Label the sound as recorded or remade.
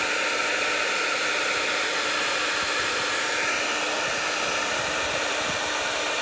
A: recorded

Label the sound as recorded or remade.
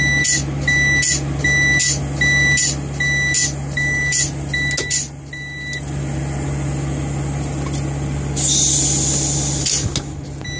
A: recorded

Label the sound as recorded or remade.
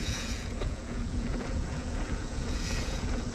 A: remade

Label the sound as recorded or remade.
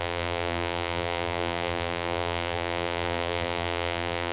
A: remade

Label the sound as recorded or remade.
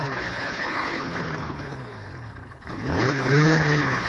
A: remade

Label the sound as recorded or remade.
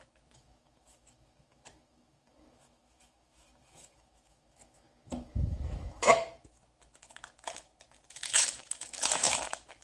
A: remade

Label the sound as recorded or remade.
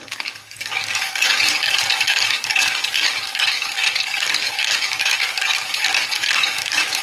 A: remade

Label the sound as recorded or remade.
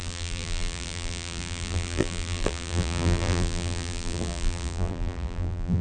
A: remade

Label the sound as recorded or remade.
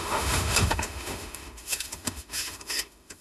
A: remade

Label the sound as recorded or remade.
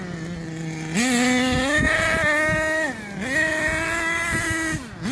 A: recorded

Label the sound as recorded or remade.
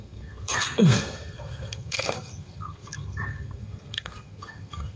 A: remade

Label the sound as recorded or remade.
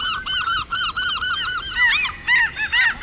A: recorded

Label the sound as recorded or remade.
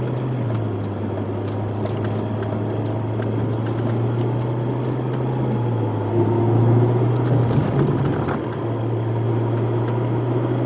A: recorded